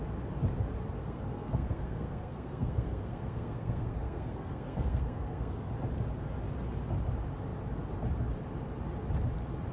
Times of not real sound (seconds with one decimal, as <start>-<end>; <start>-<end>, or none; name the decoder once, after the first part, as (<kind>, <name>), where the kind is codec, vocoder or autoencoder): 1.0-5.7 (codec, SNAC)